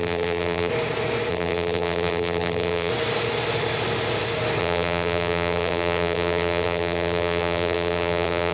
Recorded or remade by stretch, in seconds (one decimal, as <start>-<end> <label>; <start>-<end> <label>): 0.0-0.7 remade; 0.7-1.3 recorded; 1.3-2.9 remade; 2.9-4.6 recorded; 4.6-8.5 remade